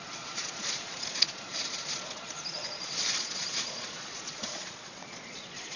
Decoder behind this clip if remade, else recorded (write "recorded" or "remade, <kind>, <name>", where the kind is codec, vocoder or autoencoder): remade, vocoder, Vocos